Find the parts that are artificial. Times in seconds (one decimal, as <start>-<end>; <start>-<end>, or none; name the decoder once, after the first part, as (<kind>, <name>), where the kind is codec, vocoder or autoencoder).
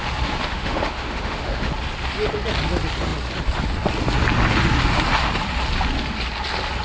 0.5-1.7 (autoencoder, DAC-VAE)